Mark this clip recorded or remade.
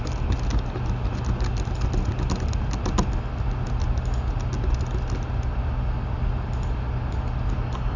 recorded